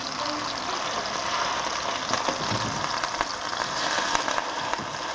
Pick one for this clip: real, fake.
real